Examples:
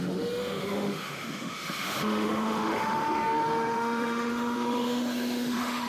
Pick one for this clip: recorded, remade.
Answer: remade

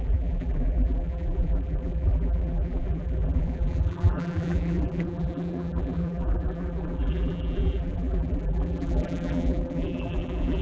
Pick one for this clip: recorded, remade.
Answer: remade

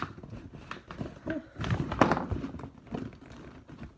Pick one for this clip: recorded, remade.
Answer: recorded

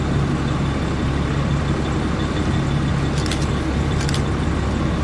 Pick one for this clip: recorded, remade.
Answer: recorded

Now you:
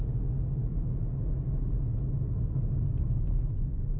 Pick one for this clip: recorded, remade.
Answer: recorded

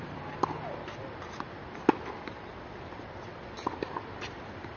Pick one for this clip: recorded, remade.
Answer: recorded